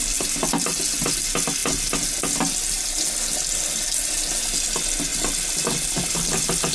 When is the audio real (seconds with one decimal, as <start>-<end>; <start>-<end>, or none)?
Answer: 0.0-6.7